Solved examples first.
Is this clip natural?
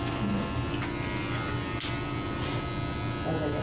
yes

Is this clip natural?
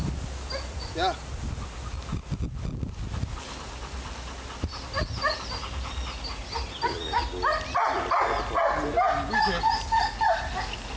yes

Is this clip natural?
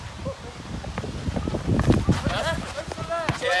yes